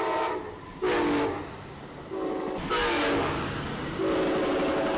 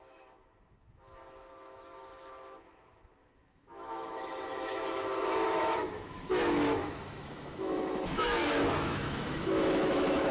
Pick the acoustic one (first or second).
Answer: first